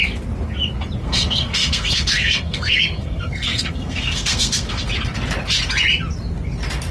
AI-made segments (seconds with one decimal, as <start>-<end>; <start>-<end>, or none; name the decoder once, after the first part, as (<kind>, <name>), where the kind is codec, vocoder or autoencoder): 1.0-4.9 (codec, SNAC)

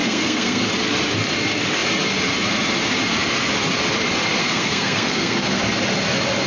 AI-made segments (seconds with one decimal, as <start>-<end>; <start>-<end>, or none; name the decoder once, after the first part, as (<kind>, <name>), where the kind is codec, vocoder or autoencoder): 0.0-0.6 (codec, SNAC); 4.4-5.6

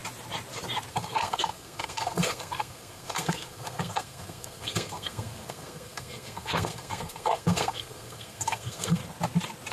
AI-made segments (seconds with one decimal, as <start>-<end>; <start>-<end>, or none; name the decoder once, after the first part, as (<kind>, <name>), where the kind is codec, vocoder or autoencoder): 0.9-9.0 (codec, SNAC)

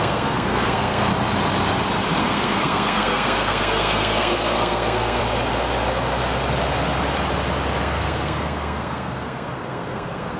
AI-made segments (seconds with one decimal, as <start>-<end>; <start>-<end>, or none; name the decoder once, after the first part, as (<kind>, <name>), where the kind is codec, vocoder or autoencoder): 0.0-1.1 (codec, SNAC); 2.2-5.2; 7.8-10.4

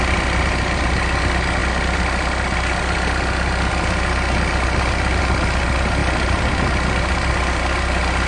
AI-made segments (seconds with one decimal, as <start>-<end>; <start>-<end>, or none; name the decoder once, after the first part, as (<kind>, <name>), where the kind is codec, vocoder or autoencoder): none

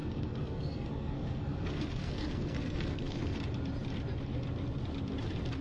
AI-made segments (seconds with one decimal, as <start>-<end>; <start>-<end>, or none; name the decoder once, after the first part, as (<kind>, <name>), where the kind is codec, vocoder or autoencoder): 0.0-3.4 (codec, SNAC)

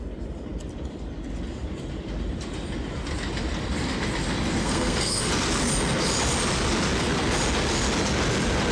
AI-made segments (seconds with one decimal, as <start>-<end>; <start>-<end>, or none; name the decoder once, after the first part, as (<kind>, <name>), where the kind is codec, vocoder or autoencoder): 4.6-5.3 (codec, SNAC)

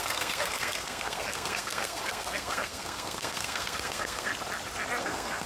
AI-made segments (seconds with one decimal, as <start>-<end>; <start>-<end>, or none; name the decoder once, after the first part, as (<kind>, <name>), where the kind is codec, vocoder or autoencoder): 0.0-4.3 (codec, SNAC); 5.0-5.5